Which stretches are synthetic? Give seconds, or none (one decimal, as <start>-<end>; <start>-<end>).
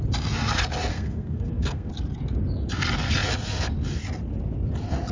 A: 0.9-1.9